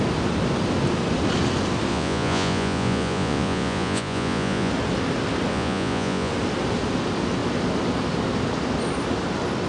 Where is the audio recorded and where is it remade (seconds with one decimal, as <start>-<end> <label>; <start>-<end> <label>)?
0.0-1.9 recorded; 1.9-4.7 remade; 4.7-5.5 recorded; 5.5-6.3 remade; 6.3-9.7 recorded